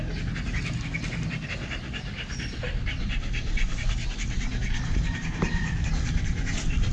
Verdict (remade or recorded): recorded